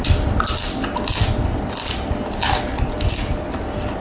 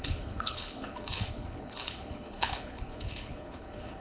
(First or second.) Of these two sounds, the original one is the first